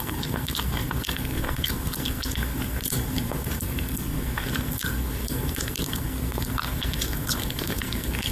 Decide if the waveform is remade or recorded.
remade